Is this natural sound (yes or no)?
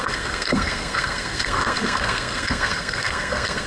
no